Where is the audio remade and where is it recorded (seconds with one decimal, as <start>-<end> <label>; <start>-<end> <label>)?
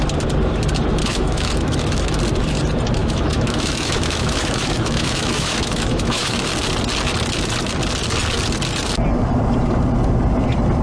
0.0-1.0 recorded; 1.0-2.2 remade; 2.2-3.0 recorded; 3.0-6.5 remade; 6.5-10.8 recorded